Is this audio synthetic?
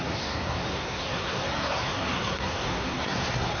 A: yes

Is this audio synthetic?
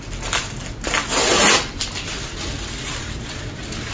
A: no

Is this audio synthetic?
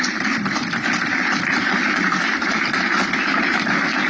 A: yes